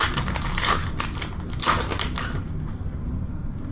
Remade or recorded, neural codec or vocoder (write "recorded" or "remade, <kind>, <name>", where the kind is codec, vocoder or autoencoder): recorded